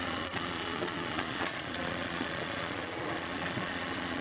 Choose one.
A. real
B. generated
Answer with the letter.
B